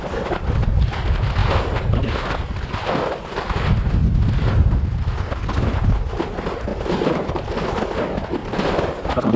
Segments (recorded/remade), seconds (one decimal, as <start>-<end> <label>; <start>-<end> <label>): 0.0-9.4 remade